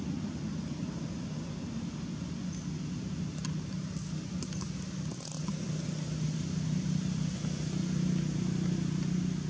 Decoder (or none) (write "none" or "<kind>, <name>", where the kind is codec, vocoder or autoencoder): none